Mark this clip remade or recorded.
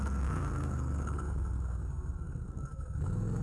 remade